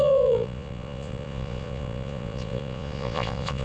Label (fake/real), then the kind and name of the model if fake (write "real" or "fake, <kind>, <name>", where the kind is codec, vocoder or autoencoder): fake, vocoder, Vocos